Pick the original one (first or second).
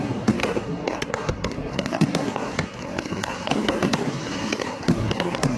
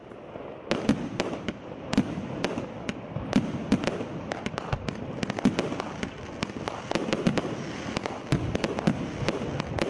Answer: second